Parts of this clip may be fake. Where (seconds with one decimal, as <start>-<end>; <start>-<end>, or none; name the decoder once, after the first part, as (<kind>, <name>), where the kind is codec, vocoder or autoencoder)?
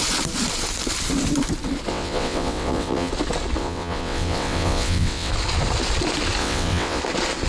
1.9-3.1 (vocoder, WaveNeXt); 3.6-5.3; 6.4-7.0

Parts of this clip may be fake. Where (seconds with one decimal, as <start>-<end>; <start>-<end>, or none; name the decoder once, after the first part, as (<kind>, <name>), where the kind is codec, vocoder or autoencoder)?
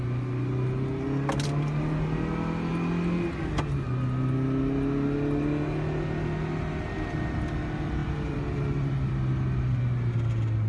none